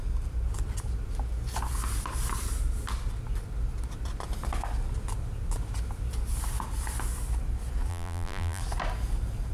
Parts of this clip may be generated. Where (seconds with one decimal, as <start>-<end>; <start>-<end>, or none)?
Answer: 7.9-8.6